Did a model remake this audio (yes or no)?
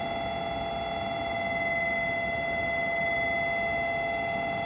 no